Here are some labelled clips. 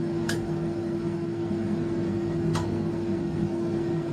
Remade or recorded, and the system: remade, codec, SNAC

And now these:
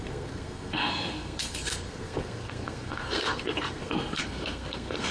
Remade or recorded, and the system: remade, codec, SNAC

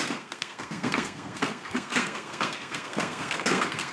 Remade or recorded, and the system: remade, codec, SNAC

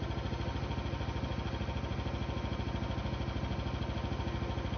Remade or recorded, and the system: recorded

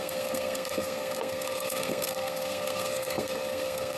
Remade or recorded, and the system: remade, codec, SNAC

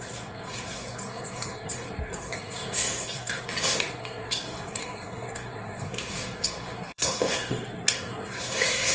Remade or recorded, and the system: remade, codec, SNAC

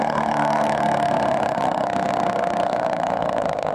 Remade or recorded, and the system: remade, codec, SNAC